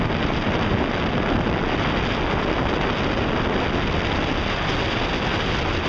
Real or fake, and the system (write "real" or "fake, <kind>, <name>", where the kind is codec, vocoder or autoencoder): real